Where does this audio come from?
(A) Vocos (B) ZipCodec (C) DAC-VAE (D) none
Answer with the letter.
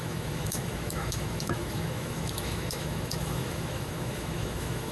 C